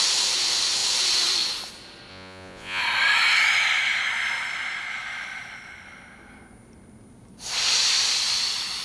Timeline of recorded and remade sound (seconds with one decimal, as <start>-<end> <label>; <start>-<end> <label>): 0.0-2.1 recorded; 2.1-2.8 remade; 2.8-8.8 recorded